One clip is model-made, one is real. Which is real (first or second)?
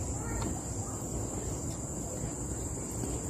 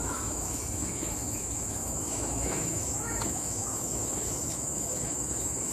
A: first